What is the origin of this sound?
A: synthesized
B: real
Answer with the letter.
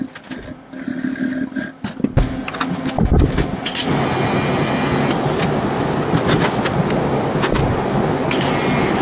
B